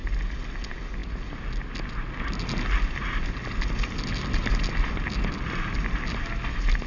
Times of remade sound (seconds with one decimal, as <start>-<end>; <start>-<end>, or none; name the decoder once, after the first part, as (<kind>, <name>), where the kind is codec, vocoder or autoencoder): none

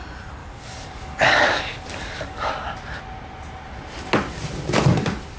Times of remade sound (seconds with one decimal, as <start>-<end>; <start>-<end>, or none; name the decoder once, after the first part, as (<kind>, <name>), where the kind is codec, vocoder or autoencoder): 0.4-2.5 (codec, DAC)

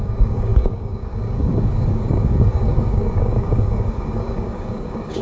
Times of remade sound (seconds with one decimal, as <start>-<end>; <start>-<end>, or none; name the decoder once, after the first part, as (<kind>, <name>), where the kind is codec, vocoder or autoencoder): 0.0-5.2 (codec, DAC)

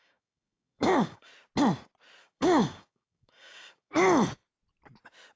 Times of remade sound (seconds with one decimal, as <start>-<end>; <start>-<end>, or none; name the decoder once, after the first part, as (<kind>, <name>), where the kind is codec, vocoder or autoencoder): 0.0-1.3 (codec, DAC); 2.2-3.9

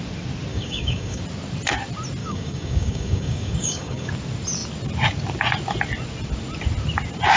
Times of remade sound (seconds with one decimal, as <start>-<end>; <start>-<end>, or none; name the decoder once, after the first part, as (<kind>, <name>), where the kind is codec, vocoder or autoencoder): 0.5-1.2 (codec, DAC); 2.2-4.1

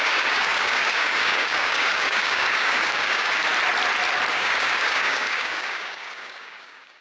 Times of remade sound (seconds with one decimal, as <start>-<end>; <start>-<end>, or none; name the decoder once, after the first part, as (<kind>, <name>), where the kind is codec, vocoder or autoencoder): 0.0-3.5 (codec, DAC); 4.3-7.0

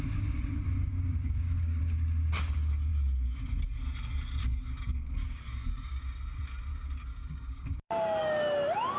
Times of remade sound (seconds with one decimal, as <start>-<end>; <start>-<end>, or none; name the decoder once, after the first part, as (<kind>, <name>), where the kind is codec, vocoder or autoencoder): 0.9-1.8 (codec, DAC); 4.4-6.0; 6.7-7.9